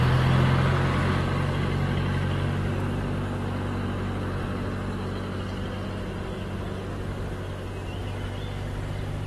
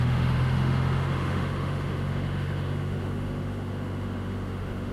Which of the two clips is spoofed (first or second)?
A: second